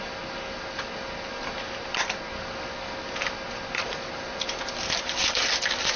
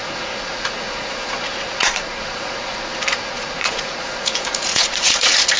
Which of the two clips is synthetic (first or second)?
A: second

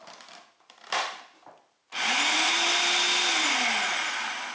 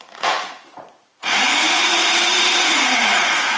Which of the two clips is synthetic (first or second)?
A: second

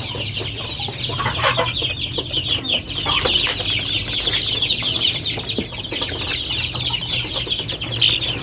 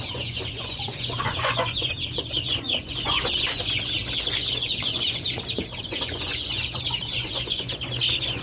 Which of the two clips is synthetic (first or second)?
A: second